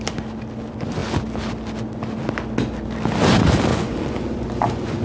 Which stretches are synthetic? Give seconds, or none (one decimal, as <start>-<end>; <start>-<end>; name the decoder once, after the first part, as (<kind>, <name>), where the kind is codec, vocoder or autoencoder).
3.7-5.0 (vocoder, Vocos)

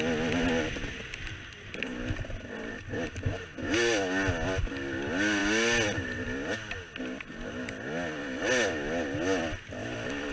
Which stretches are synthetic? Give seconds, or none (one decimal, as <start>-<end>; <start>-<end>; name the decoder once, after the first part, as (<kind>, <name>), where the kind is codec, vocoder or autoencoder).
none

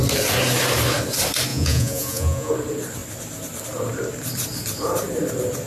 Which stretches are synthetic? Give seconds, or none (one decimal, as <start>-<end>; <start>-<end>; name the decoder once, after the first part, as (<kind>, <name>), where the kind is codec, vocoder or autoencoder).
1.5-2.5 (vocoder, Vocos)

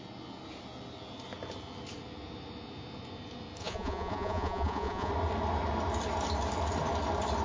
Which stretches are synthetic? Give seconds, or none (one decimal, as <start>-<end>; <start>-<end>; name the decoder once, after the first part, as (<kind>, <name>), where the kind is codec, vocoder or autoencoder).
3.6-5.1 (vocoder, Vocos)

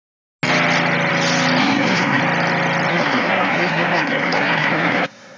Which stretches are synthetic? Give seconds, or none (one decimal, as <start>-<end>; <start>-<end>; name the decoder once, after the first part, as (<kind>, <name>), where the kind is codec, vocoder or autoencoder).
1.6-2.2 (codec, SNAC); 2.9-5.4

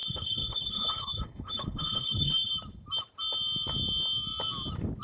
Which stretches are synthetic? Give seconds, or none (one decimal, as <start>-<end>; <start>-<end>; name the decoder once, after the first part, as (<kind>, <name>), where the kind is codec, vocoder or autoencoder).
0.0-2.5 (codec, HILCodec)